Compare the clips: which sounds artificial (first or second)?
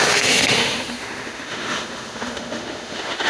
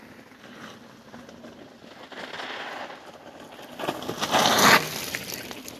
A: first